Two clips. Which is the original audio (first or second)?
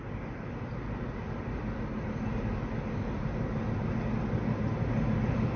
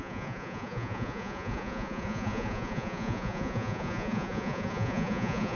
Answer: first